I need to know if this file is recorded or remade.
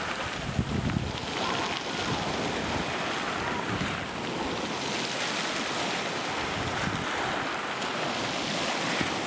recorded